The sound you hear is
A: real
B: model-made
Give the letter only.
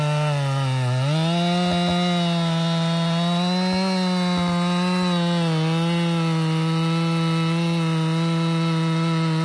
A